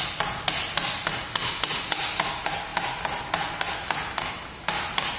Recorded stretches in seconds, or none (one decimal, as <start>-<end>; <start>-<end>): 0.0-5.2